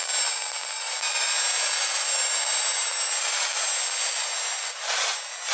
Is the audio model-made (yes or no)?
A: no